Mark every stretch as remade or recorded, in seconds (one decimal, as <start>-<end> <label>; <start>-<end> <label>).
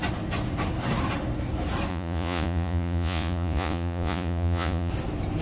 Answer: 0.0-1.9 recorded; 1.9-4.9 remade; 4.9-5.4 recorded